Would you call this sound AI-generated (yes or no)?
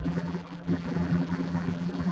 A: yes